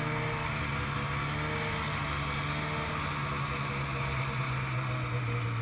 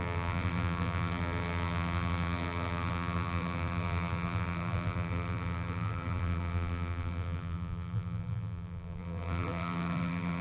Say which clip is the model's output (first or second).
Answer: second